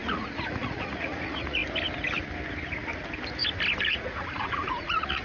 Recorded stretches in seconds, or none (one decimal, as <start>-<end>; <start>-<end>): 1.6-3.8